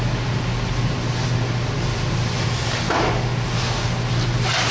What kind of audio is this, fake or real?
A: real